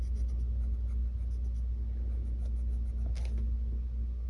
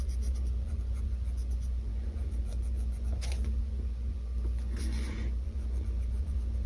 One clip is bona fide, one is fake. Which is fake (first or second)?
second